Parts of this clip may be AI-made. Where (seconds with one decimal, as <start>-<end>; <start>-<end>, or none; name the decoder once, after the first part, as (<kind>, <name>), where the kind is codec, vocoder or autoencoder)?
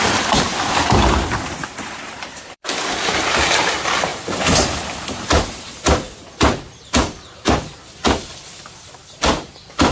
0.0-0.5 (vocoder, BigVGAN v2); 1.1-4.1; 7.0-9.9